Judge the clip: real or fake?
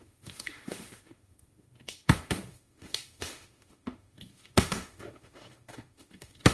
fake